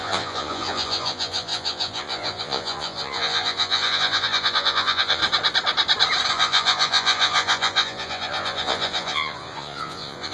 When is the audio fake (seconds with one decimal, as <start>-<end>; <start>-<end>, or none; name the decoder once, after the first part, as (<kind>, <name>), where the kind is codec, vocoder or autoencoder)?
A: 0.0-5.2 (vocoder, Vocos); 6.3-10.3